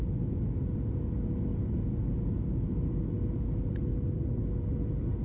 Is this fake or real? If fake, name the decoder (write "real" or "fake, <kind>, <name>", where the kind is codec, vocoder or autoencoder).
real